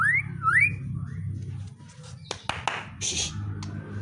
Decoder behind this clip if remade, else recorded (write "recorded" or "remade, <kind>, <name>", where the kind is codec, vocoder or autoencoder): recorded